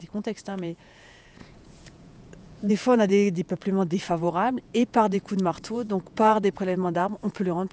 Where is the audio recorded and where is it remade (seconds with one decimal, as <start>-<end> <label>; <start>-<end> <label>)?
0.0-3.1 remade; 3.1-4.1 recorded; 4.1-7.7 remade